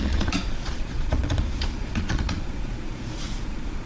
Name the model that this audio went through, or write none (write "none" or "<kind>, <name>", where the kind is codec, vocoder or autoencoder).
vocoder, Vocos